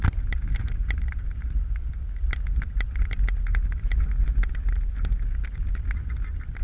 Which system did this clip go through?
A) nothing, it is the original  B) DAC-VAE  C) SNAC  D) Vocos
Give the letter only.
A